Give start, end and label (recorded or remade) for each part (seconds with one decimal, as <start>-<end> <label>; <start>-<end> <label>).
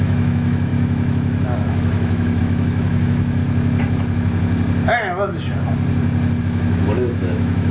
0.0-3.4 remade; 3.4-6.4 recorded; 6.4-7.7 remade